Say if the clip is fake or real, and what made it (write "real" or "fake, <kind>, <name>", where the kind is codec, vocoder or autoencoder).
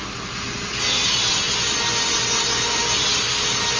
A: real